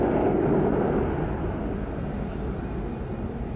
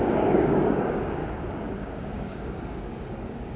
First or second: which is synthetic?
second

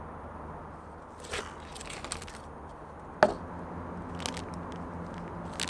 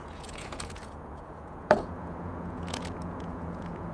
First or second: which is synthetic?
second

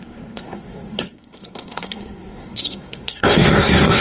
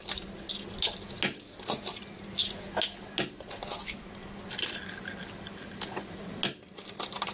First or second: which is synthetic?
first